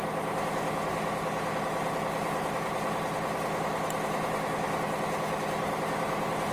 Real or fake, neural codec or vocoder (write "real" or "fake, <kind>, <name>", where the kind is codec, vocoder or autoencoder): real